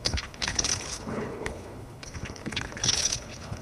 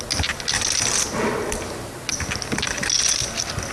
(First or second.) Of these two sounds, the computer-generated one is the first